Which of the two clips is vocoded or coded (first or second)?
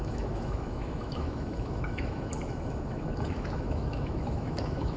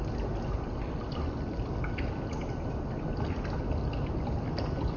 first